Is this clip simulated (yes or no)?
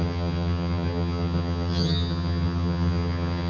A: yes